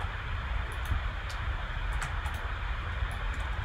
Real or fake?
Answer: real